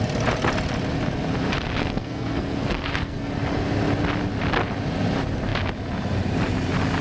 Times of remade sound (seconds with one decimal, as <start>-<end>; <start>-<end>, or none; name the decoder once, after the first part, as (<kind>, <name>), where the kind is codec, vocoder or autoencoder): 1.8-3.3 (codec, SNAC)